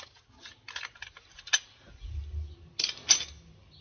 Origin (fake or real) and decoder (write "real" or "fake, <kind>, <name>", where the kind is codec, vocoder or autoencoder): real